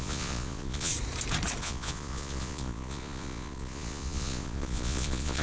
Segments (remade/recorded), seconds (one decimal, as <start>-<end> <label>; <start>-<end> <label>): 0.0-0.9 remade; 0.9-1.6 recorded; 1.6-5.4 remade

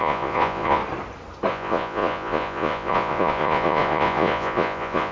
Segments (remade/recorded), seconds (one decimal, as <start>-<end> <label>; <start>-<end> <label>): 0.0-0.8 remade; 0.8-1.5 recorded; 1.5-5.1 remade

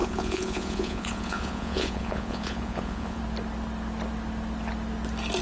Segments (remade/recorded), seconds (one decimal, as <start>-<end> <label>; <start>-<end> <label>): 0.0-3.2 remade; 3.2-5.4 recorded

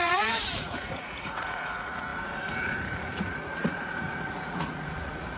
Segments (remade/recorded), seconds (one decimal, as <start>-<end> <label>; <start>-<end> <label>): 0.0-5.4 remade

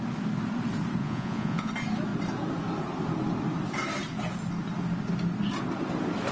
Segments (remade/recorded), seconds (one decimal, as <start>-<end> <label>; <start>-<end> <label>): 0.0-1.0 recorded; 1.0-1.7 remade; 1.7-6.3 recorded